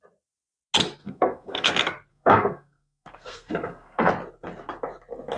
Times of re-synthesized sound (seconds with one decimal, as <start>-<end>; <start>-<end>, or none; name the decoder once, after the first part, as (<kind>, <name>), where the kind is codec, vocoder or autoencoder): 1.0-1.7 (codec, SNAC); 2.1-4.1